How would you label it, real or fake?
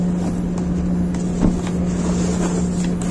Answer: real